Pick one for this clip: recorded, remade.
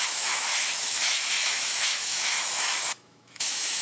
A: remade